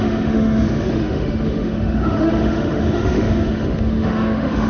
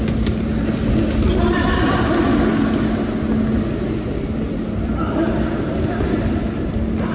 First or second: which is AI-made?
first